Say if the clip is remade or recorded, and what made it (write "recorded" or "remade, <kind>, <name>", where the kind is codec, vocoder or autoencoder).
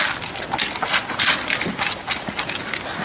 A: recorded